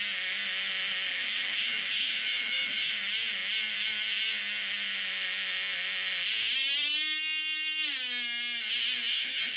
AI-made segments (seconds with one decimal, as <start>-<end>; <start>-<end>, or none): 1.1-2.9; 9.1-9.6